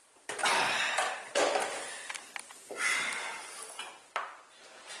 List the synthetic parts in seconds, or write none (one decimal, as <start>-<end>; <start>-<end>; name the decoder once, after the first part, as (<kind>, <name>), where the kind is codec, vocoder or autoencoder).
none

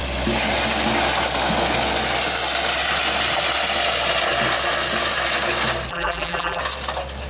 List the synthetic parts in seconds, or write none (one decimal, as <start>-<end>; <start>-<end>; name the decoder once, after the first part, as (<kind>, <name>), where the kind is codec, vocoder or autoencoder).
5.9-6.6 (vocoder, BigVGAN v2)

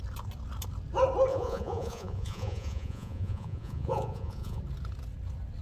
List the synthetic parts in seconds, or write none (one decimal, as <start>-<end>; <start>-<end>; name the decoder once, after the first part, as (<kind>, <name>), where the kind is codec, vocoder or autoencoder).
1.3-4.6 (vocoder, Vocos)

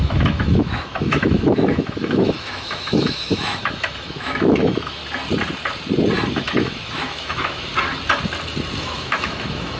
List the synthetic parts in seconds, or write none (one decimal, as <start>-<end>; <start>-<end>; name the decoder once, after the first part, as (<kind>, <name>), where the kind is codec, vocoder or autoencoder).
0.0-5.0 (autoencoder, DAC-VAE); 6.3-7.7; 8.8-9.8

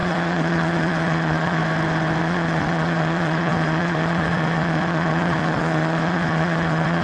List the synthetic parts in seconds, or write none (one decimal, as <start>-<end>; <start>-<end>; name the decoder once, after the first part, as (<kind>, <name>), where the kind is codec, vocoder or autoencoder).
0.0-1.6 (vocoder, Vocos); 2.2-7.0